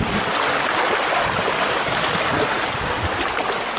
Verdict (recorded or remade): recorded